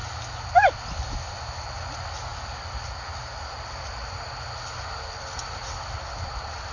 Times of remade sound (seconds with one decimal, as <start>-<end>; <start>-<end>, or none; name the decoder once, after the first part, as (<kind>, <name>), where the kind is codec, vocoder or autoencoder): none